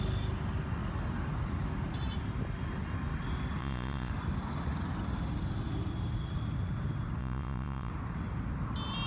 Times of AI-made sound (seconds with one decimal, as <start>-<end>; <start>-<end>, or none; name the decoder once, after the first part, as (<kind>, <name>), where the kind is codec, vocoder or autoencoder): 3.6-4.1 (vocoder, Vocos); 7.2-7.9

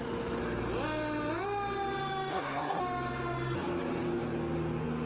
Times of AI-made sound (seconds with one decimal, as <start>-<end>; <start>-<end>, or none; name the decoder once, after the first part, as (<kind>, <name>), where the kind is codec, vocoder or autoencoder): 2.3-2.8 (codec, SNAC)

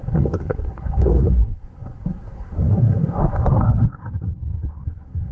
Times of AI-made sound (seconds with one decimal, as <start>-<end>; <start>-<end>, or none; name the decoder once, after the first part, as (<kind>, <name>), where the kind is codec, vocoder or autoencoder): 0.0-5.3 (codec, SNAC)

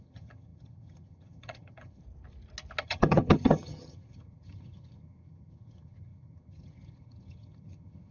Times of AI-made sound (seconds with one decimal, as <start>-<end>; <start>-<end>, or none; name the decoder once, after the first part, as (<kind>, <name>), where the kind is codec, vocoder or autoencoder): 0.0-2.0 (vocoder, HiFi-GAN); 2.8-8.1

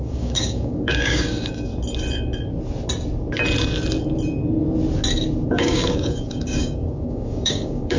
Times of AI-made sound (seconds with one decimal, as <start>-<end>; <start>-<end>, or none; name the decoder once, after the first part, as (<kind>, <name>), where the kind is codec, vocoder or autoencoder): 0.0-1.7 (codec, DAC); 5.5-8.0

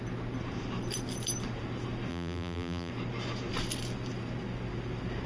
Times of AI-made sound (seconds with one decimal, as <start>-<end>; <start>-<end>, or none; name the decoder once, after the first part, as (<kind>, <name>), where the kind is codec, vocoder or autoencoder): 2.1-2.9 (vocoder, BigVGAN v2)